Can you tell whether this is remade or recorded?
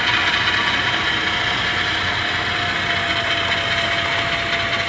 recorded